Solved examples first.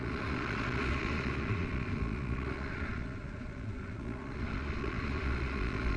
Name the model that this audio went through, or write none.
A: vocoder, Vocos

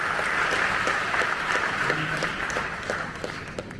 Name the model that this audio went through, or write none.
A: none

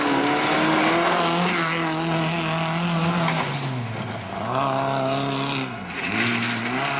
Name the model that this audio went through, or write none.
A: none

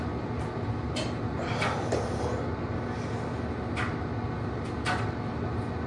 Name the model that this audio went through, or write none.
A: none